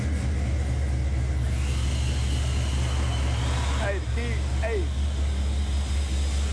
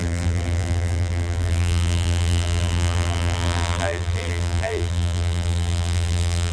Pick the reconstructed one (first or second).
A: second